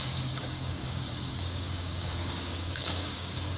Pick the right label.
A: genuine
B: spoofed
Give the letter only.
B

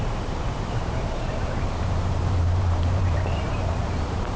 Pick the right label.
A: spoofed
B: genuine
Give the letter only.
A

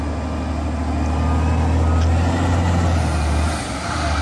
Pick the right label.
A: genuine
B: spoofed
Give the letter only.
A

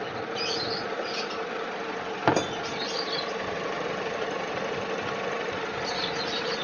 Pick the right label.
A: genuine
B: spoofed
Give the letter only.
B